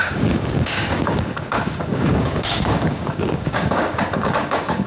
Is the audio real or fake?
fake